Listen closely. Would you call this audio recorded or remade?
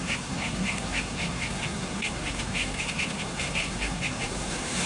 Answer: remade